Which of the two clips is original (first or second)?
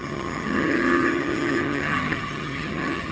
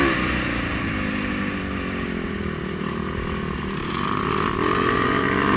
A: second